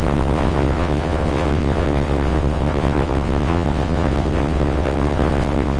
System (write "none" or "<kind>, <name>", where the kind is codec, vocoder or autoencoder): vocoder, WaveNeXt